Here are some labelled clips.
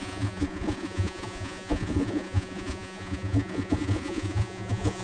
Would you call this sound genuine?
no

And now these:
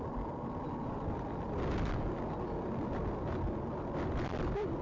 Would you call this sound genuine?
yes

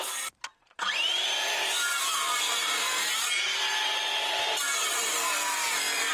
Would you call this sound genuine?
no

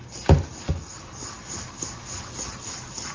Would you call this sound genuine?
yes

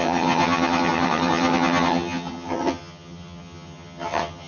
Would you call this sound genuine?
no